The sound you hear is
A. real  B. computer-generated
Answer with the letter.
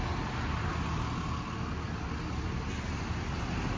A